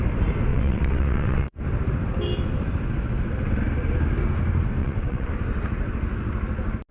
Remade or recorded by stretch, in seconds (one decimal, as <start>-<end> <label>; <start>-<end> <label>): 0.0-0.5 recorded; 0.5-1.6 remade; 1.6-4.8 recorded; 4.8-5.3 remade; 5.3-6.9 recorded